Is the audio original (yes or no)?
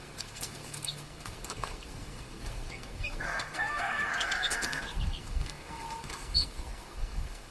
no